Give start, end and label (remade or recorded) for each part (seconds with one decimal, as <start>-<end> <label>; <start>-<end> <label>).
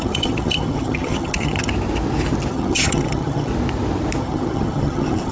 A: 0.0-1.7 remade; 1.7-2.5 recorded; 2.5-3.5 remade; 3.5-4.2 recorded; 4.2-5.3 remade